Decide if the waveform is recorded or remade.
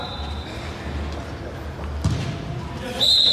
recorded